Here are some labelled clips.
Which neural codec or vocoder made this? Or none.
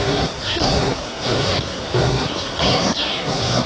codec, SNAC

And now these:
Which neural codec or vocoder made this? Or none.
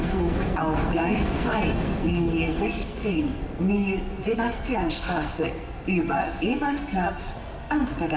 codec, SNAC